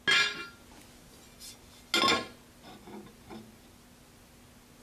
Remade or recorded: recorded